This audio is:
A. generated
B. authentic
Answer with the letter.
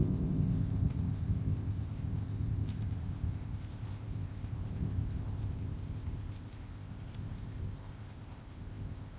A